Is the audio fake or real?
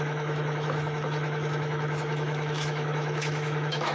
fake